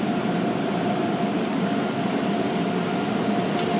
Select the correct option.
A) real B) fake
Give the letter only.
A